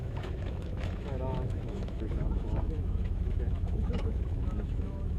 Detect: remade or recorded remade